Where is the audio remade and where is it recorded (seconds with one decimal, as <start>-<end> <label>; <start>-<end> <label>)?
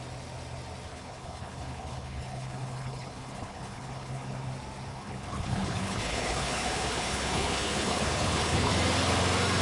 0.0-0.9 recorded; 0.9-4.5 remade; 4.5-4.9 recorded; 4.9-8.7 remade; 8.7-9.6 recorded